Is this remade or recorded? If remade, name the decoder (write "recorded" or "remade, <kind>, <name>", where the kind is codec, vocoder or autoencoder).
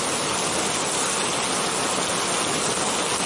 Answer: recorded